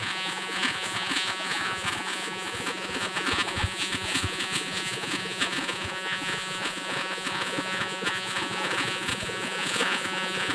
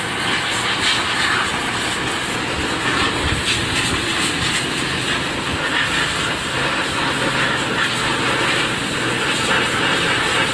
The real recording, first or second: second